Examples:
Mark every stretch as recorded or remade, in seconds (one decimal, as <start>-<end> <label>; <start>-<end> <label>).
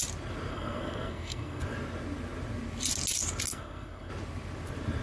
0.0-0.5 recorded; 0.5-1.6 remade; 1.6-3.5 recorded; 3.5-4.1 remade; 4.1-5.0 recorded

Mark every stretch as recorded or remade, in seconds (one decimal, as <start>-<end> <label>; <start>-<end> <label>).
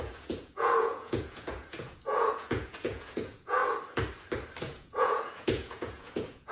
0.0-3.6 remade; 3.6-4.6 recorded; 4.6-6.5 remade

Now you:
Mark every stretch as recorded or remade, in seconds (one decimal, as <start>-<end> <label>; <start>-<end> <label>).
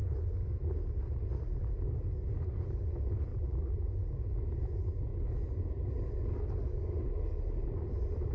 0.0-3.3 recorded; 3.3-3.8 remade; 3.8-8.3 recorded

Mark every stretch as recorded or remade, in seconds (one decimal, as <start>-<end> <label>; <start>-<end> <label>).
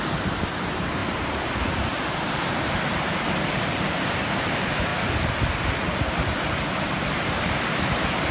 0.0-4.9 remade; 4.9-8.3 recorded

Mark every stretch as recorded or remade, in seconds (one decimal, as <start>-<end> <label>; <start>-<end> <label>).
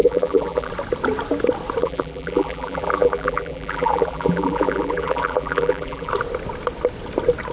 0.0-0.7 remade; 0.7-1.8 recorded; 1.8-6.1 remade; 6.1-7.5 recorded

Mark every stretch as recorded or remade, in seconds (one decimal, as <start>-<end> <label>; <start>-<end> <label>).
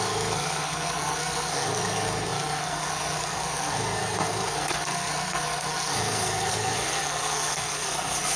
0.0-8.4 remade